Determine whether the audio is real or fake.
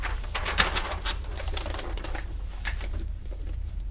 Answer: fake